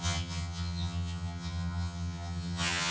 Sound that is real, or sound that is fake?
fake